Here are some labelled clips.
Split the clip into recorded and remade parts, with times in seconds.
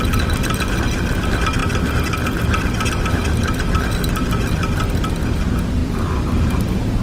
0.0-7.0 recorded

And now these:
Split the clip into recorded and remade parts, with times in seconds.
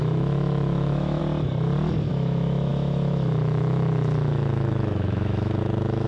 0.0-1.2 remade; 1.2-2.1 recorded; 2.1-6.1 remade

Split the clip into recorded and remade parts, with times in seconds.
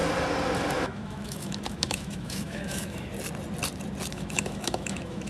0.0-0.7 recorded; 0.7-3.1 remade; 3.1-4.1 recorded; 4.1-5.3 remade